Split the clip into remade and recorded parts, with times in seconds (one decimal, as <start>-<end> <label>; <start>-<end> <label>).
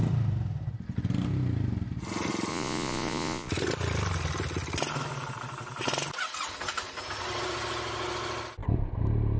0.0-2.5 recorded; 2.5-3.5 remade; 3.5-9.4 recorded